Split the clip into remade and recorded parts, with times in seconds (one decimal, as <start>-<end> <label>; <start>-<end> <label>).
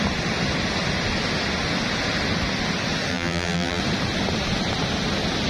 0.0-3.1 recorded; 3.1-3.8 remade; 3.8-5.5 recorded